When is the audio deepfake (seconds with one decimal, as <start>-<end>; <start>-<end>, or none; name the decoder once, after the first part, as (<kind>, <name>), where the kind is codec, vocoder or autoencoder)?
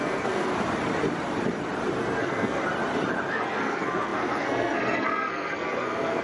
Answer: 0.0-0.5 (codec, SNAC); 2.0-2.6; 3.3-6.2